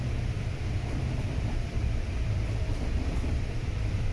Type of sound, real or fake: fake